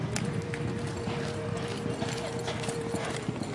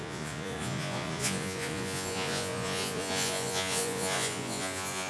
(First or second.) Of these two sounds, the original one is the first